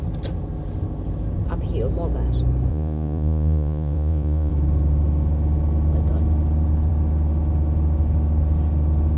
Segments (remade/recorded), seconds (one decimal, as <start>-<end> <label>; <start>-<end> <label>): 0.0-2.7 recorded; 2.7-4.5 remade; 4.5-9.2 recorded